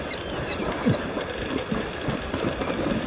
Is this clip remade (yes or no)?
no